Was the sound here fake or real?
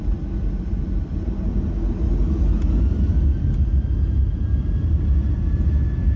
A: real